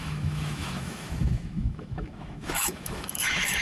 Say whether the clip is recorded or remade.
remade